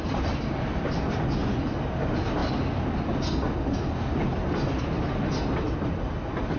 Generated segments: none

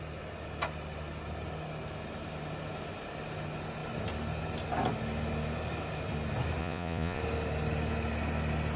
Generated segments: 6.6-7.2 (vocoder, Vocos)

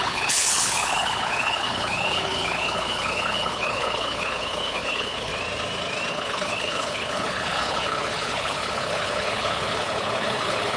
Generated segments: 0.0-5.3 (codec, HILCodec); 6.1-10.8

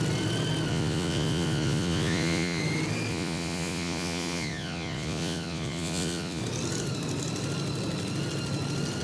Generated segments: 0.7-2.6 (vocoder, Vocos); 3.1-6.4

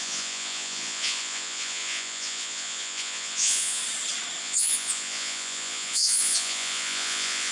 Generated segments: 0.0-3.8 (vocoder, Vocos); 4.4-7.5

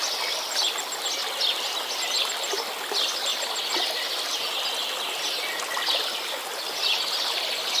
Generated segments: none